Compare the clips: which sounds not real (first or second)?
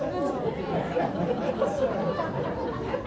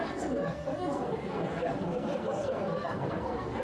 second